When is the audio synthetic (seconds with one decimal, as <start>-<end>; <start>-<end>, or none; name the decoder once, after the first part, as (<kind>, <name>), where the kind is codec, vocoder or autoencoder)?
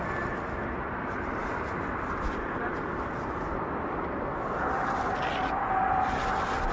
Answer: none